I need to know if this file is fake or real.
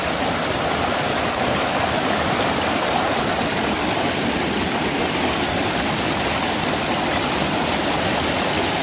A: real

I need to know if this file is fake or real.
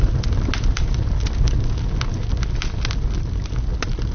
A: real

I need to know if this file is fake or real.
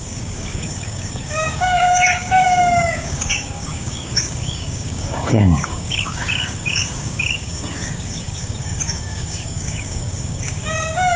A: fake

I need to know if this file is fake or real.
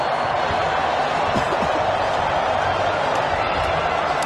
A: real